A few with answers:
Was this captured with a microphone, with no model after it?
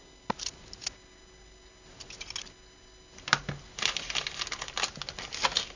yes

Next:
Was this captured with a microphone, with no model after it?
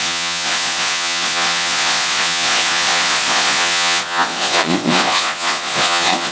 no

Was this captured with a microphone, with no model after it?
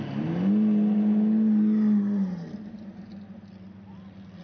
yes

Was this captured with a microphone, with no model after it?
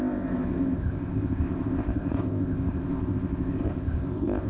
no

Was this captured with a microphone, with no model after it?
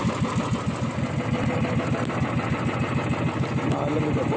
yes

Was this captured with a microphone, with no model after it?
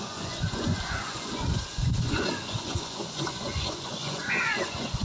no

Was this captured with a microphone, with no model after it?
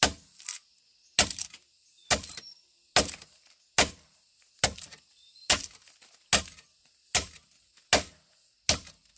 yes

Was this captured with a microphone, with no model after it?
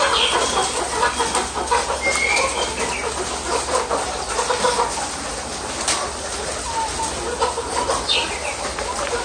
yes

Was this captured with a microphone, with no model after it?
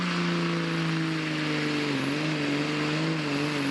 yes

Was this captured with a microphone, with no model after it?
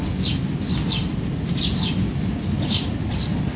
yes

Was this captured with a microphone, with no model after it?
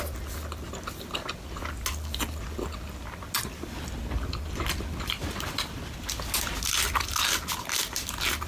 yes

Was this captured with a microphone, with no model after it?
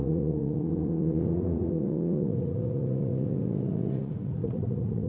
no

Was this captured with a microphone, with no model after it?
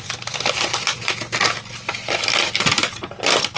yes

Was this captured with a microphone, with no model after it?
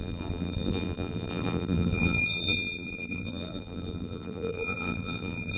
no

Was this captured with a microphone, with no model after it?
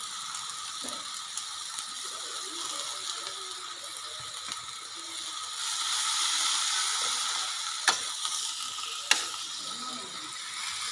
yes